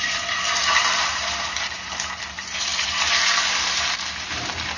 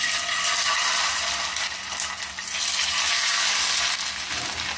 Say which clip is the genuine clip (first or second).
second